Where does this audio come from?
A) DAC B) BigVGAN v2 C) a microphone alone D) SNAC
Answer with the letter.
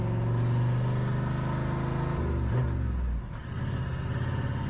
C